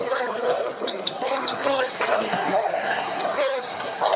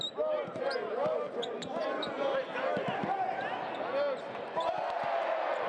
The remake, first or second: first